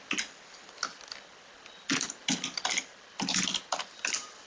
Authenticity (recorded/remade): recorded